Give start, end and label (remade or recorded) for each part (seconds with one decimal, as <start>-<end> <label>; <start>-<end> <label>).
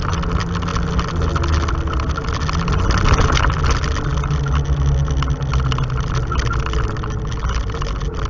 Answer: 0.0-8.3 recorded